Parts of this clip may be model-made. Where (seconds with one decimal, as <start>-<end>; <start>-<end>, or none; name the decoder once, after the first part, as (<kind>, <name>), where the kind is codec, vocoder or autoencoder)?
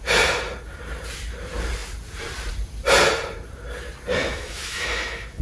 4.2-5.4 (autoencoder, DAC-VAE)